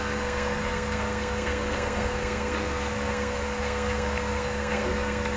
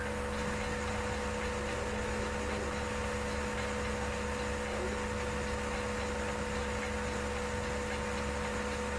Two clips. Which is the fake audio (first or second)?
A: first